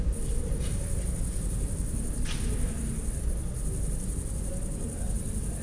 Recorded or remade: recorded